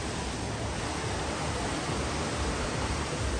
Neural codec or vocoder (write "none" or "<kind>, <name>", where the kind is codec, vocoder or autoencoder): none